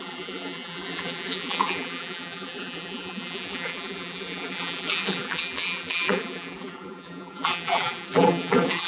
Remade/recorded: remade